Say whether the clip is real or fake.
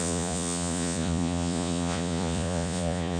fake